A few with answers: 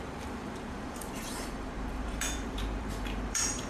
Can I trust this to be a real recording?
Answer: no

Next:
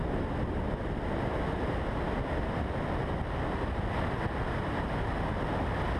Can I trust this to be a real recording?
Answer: yes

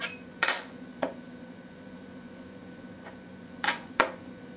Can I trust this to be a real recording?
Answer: no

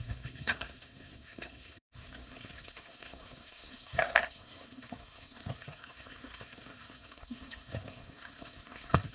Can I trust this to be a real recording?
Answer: no